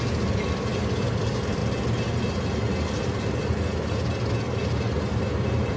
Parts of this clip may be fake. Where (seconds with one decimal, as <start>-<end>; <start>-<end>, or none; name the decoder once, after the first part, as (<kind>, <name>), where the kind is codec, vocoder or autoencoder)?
0.7-1.2 (vocoder, BigVGAN v2)